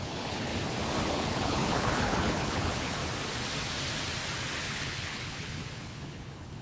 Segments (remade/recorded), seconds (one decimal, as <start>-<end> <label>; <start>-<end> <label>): 0.0-0.5 remade; 0.5-1.1 recorded; 1.1-3.0 remade; 3.0-4.6 recorded; 4.6-6.6 remade